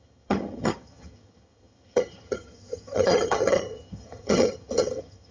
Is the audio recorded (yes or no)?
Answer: no